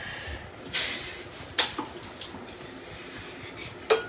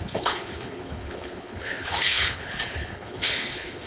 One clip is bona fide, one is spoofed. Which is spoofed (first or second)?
second